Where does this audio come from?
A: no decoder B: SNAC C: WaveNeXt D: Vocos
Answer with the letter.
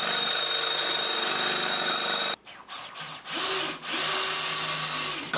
A